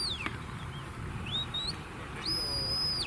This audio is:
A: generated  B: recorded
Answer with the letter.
B